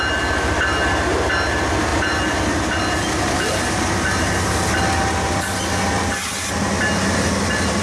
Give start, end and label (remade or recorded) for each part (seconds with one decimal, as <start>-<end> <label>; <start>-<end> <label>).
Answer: 0.0-7.8 recorded